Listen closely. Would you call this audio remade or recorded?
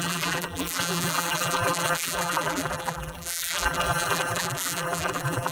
remade